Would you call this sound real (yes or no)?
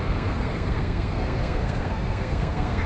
no